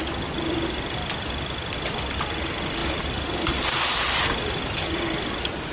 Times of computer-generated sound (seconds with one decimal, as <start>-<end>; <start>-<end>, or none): 2.8-4.1